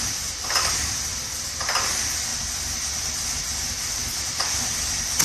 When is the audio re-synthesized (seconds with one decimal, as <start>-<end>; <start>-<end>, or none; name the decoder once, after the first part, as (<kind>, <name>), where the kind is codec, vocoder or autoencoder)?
0.0-5.2 (vocoder, BigVGAN v2)